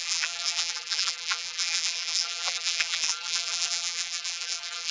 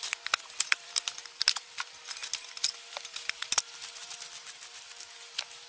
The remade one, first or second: first